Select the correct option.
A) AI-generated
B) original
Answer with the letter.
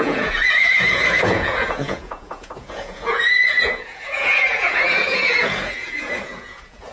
A